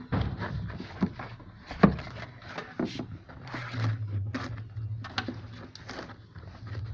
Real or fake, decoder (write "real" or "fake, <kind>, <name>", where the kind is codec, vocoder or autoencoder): real